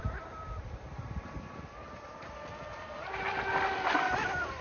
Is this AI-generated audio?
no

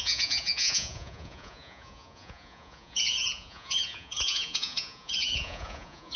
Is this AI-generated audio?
yes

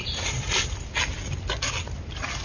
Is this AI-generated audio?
no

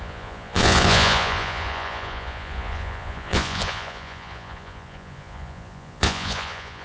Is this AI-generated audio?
yes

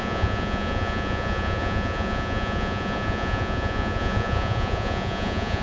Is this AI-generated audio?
yes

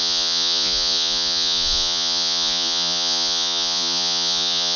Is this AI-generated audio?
yes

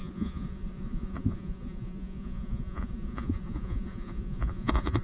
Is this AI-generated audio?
yes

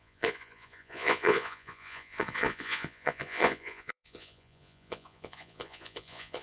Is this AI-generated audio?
yes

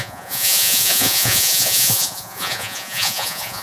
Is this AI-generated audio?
yes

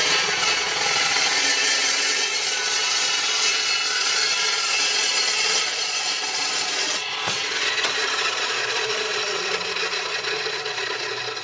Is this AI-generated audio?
yes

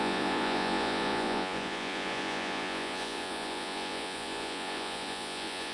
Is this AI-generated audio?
yes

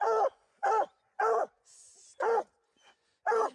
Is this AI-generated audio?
yes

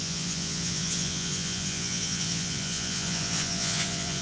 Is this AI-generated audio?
yes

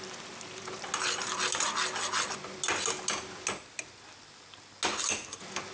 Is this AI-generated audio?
no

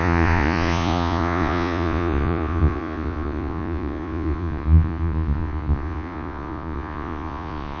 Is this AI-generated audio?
yes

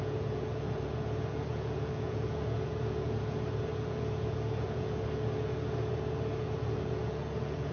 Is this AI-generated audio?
yes